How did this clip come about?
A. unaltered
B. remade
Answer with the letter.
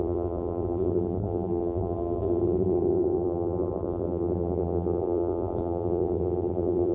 B